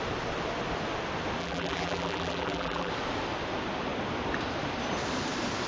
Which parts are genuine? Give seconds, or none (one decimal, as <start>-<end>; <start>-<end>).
0.0-1.4; 2.9-5.7

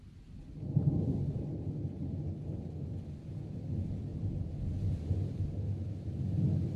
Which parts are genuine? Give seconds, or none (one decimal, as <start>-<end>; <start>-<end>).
0.0-6.8

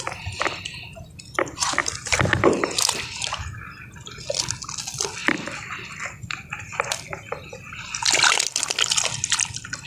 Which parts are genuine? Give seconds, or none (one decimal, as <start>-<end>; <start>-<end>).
0.0-9.9